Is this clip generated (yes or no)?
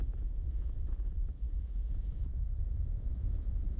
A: yes